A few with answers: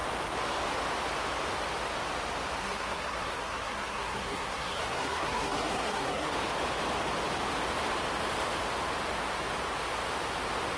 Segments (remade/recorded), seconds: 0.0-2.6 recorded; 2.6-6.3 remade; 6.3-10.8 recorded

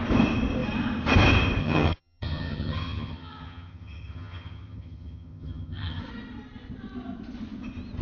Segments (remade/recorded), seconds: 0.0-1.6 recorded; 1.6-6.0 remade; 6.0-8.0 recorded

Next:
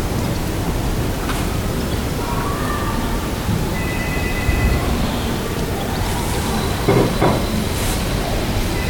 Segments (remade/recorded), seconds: 0.0-3.7 recorded; 3.7-8.9 remade

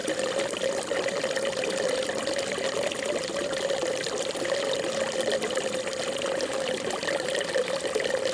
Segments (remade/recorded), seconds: 0.0-8.3 recorded

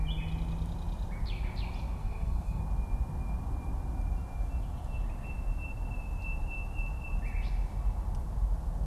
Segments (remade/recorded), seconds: 0.0-2.0 recorded; 2.0-2.6 remade; 2.6-8.9 recorded